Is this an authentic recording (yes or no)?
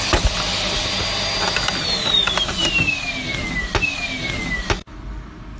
yes